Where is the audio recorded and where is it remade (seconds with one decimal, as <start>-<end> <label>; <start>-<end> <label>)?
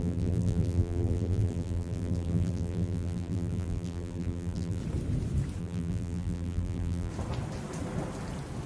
0.0-4.8 remade; 4.8-5.6 recorded; 5.6-7.1 remade; 7.1-8.7 recorded